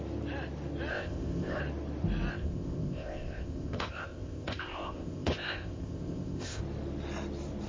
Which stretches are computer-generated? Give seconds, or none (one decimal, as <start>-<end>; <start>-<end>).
0.9-1.6; 2.3-6.6